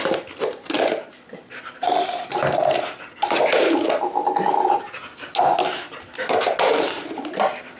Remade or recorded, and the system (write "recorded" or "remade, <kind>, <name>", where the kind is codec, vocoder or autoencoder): recorded